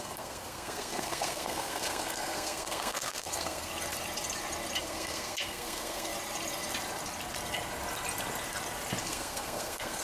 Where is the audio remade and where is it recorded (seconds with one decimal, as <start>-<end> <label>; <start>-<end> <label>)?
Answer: 0.0-3.7 remade; 3.7-4.8 recorded; 4.8-6.1 remade; 6.1-9.0 recorded; 9.0-10.0 remade